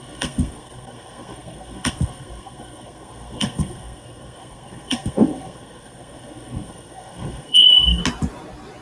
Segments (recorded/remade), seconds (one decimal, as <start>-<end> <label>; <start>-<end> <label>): 0.0-8.0 remade; 8.0-8.8 recorded